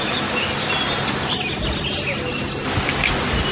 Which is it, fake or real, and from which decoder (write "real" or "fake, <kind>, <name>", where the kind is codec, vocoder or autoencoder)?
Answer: real